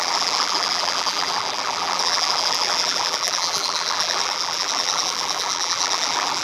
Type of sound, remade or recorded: remade